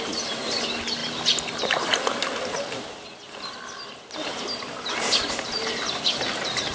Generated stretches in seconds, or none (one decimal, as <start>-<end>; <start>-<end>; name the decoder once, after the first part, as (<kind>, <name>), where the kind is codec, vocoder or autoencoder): none